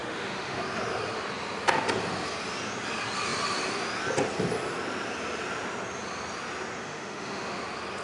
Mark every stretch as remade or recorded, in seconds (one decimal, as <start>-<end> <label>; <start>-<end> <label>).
0.0-0.6 remade; 0.6-6.8 recorded; 6.8-7.6 remade; 7.6-8.0 recorded